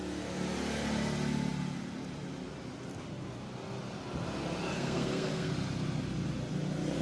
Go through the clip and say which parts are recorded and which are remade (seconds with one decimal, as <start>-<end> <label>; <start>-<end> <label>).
0.0-4.7 recorded; 4.7-5.5 remade; 5.5-7.0 recorded